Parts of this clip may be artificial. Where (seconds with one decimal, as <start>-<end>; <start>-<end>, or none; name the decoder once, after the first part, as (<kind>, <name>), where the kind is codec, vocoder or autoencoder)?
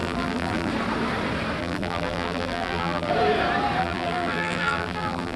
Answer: 0.0-0.7 (vocoder, BigVGAN v2); 1.6-3.1; 3.8-5.4